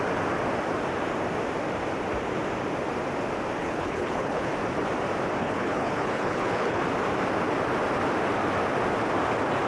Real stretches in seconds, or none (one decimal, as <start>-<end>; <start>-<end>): 0.0-3.6; 4.5-5.4; 6.8-9.7